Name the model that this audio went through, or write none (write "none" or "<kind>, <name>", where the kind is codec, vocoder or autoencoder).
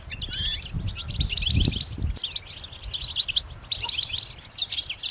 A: none